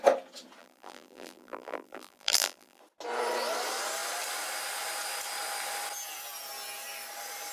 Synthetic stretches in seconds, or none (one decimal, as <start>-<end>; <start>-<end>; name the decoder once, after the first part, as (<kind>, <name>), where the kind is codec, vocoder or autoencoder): 0.6-2.8 (vocoder, BigVGAN v2)

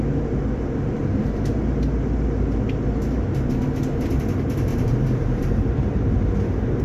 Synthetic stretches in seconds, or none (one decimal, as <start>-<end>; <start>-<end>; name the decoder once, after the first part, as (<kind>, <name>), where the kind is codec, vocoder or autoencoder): 1.0-1.5 (vocoder, BigVGAN v2); 4.7-6.1

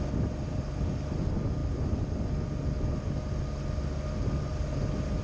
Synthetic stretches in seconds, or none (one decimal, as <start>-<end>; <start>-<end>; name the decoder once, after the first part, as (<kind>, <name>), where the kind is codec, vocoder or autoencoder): none